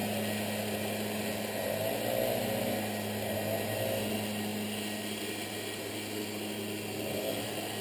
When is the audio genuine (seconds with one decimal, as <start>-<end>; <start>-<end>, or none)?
0.0-7.8